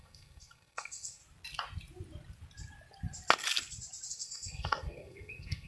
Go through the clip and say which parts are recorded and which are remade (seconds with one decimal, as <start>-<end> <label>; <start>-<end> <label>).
0.0-1.2 remade; 1.2-4.1 recorded; 4.1-5.7 remade